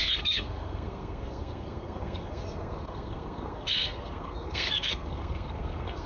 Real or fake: fake